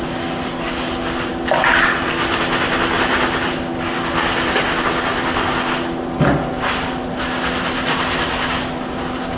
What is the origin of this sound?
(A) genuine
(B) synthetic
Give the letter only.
A